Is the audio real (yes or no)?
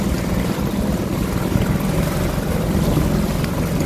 yes